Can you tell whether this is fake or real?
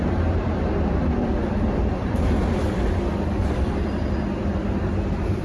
fake